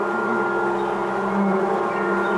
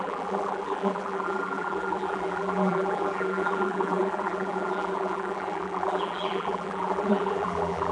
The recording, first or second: first